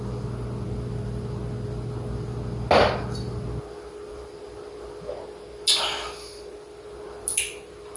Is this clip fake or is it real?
real